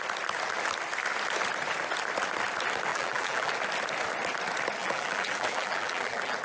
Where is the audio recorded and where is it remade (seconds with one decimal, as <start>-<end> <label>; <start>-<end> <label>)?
0.0-2.9 recorded; 2.9-3.5 remade; 3.5-4.8 recorded; 4.8-6.4 remade